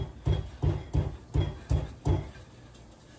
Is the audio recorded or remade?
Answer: recorded